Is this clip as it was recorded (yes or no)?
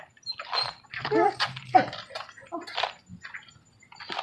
no